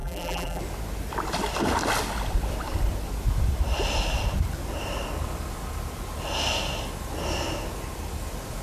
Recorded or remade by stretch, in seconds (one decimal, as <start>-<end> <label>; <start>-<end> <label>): 0.0-0.6 remade; 0.6-8.6 recorded